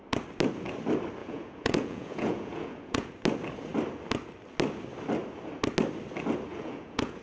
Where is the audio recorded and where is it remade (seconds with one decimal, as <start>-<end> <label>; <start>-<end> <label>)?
0.0-1.2 recorded; 1.2-3.1 remade; 3.1-6.5 recorded; 6.5-7.2 remade